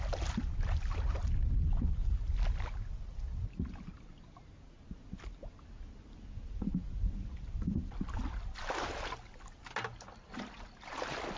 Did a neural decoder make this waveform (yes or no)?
no